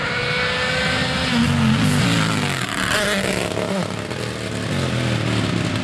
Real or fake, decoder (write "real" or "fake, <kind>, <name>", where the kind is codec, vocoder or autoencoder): real